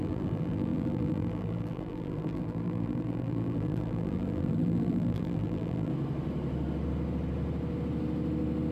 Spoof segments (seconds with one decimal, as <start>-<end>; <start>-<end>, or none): 0.0-5.9